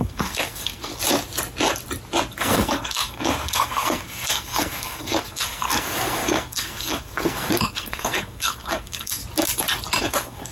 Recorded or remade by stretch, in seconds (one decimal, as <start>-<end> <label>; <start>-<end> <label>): 0.0-0.9 remade; 0.9-2.4 recorded; 2.4-9.2 remade; 9.2-10.0 recorded; 10.0-10.5 remade